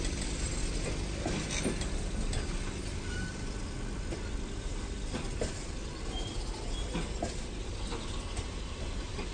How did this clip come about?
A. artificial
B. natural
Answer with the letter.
B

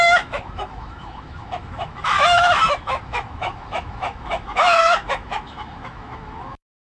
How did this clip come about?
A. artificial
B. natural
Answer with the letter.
A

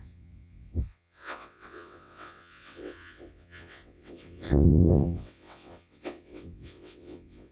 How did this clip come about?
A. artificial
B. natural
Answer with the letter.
A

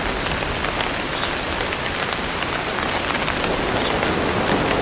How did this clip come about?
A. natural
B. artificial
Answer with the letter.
A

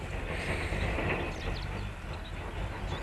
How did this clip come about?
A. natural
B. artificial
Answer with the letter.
A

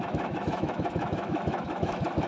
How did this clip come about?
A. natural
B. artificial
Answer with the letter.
B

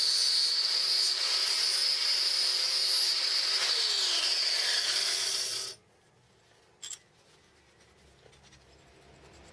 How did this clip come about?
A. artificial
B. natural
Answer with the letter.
B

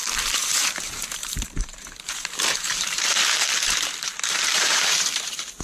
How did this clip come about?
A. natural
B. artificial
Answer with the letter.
B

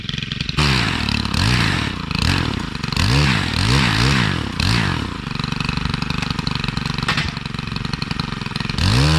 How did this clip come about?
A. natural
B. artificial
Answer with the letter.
A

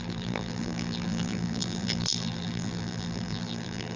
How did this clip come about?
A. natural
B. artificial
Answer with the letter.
B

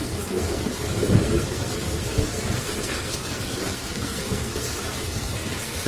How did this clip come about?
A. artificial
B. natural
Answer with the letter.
A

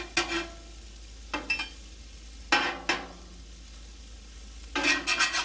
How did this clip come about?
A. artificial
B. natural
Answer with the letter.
B